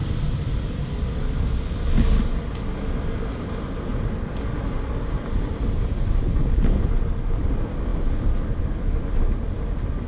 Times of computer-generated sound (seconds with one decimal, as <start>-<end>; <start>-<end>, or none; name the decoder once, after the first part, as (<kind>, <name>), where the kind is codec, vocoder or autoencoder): none